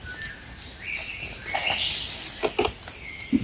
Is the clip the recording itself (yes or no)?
yes